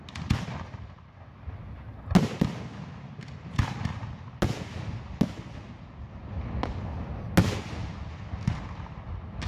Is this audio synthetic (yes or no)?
no